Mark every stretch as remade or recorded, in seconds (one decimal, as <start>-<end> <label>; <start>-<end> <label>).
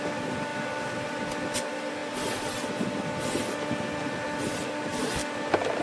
0.0-5.8 recorded